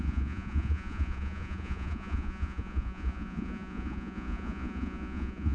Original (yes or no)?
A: no